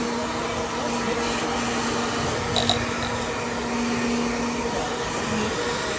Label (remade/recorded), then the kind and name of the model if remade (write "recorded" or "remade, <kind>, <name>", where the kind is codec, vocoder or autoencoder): recorded